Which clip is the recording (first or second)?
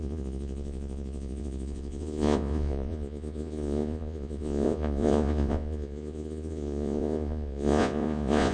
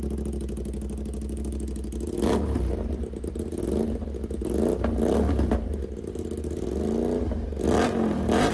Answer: second